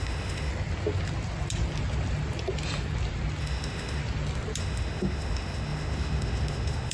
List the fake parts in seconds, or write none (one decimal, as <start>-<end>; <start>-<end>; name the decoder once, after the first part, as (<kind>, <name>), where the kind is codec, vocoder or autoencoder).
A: 0.0-0.5 (autoencoder, DAC-VAE); 3.4-4.0; 4.6-6.9